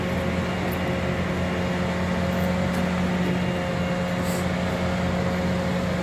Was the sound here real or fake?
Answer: real